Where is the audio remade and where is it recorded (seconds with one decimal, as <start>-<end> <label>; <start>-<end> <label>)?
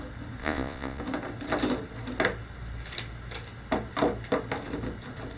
0.0-0.4 recorded; 0.4-1.0 remade; 1.0-5.4 recorded